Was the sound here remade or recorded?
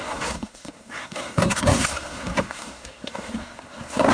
remade